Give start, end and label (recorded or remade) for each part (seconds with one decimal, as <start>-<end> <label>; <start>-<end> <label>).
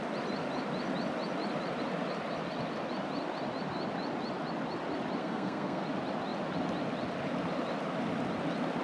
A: 0.0-5.2 recorded; 5.2-5.8 remade; 5.8-8.8 recorded